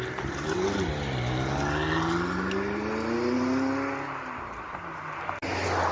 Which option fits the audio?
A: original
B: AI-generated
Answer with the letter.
A